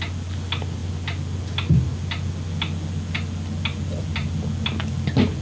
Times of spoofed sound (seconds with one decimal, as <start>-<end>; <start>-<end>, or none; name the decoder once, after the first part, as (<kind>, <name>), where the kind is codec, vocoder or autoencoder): none